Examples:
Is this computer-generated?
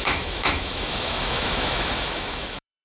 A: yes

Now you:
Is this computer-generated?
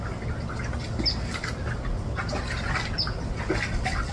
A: no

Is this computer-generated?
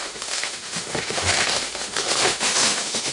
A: yes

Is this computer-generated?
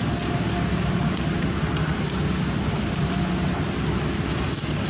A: no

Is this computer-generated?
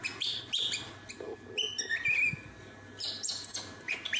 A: no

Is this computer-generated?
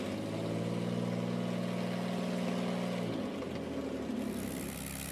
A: no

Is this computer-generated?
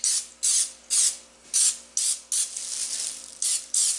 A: no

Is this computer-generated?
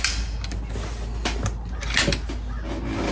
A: no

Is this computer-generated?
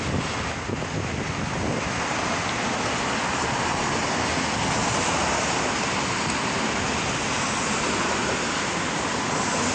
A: no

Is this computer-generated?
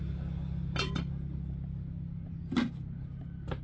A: no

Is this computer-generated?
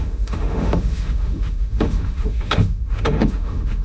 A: yes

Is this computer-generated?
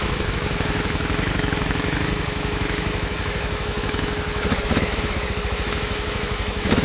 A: yes